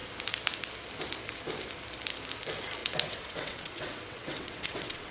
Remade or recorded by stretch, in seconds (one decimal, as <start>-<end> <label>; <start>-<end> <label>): 0.0-2.8 recorded; 2.8-5.1 remade